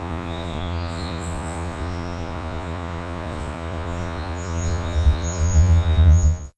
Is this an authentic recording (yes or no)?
no